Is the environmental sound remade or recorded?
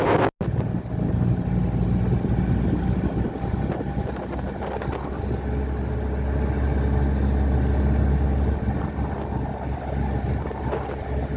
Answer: recorded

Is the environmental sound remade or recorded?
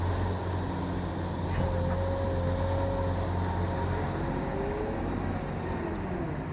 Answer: recorded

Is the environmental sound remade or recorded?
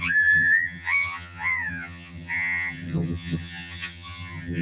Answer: remade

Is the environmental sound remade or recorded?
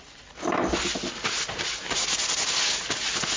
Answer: recorded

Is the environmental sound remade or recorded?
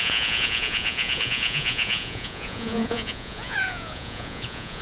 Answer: remade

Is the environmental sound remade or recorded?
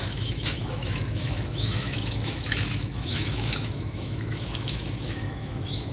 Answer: remade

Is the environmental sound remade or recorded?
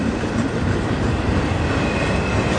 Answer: remade